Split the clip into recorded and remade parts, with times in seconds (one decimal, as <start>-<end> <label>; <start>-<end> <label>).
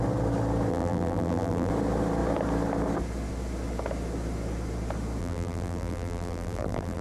0.0-0.7 recorded; 0.7-1.7 remade; 1.7-5.2 recorded; 5.2-7.0 remade